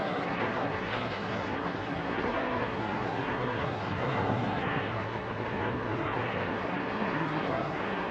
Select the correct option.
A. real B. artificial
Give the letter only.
B